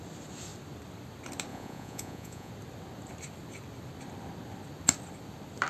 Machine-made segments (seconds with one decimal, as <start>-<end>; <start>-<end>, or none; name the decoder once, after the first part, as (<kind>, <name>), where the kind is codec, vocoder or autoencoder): 1.5-2.5 (vocoder, Vocos)